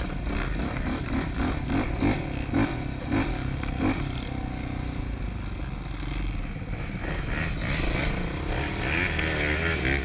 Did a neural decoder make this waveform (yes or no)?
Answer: no